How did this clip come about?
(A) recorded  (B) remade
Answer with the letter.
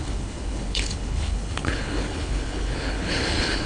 B